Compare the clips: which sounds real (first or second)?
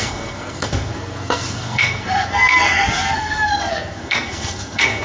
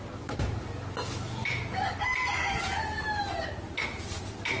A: second